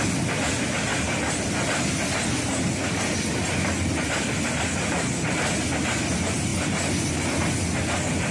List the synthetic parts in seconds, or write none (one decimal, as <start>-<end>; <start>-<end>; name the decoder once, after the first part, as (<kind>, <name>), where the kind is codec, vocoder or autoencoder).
none